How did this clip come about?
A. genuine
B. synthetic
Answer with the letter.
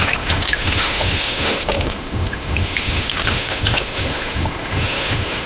B